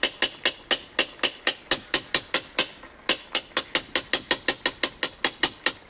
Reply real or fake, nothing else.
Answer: real